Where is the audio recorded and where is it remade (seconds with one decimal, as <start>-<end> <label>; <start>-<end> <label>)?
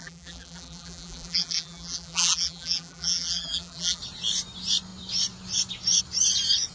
0.0-4.0 remade; 4.0-6.7 recorded